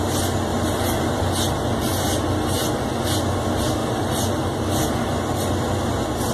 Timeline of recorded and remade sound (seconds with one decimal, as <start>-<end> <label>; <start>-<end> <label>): 0.0-0.5 recorded; 0.5-1.2 remade; 1.2-3.8 recorded; 3.8-4.9 remade; 4.9-6.3 recorded